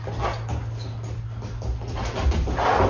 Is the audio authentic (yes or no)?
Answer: yes